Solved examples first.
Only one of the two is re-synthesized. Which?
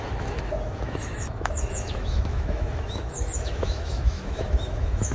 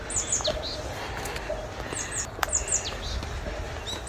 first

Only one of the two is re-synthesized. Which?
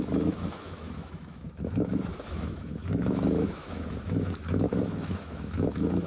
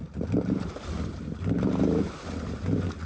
first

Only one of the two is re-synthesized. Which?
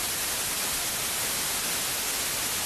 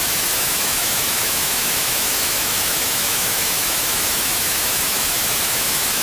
second